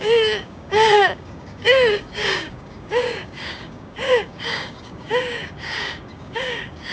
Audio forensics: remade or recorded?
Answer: remade